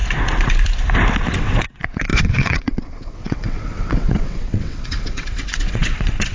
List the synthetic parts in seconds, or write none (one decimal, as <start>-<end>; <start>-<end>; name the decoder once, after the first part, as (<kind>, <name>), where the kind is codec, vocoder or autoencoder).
1.3-6.3 (vocoder, WaveNeXt)